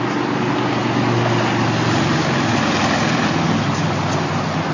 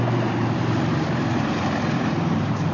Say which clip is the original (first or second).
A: first